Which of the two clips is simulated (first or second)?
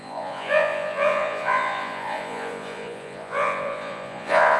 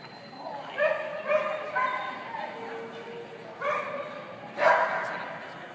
first